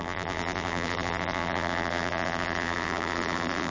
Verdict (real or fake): fake